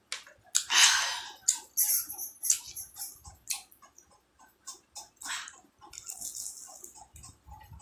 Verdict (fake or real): real